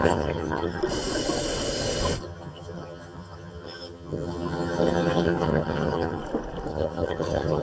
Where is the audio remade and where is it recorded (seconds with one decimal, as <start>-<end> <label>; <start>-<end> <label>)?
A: 0.0-0.8 remade; 0.8-2.2 recorded; 2.2-6.2 remade; 6.2-6.7 recorded; 6.7-7.6 remade